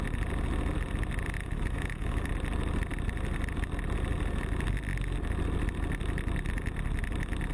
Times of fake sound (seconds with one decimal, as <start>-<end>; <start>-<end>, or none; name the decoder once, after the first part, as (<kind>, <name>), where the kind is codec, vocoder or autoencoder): 1.4-2.3 (autoencoder, DAC-VAE)